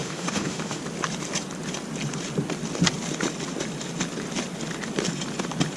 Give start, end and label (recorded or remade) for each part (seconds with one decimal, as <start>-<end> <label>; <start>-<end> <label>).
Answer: 0.0-0.8 remade; 0.8-5.8 recorded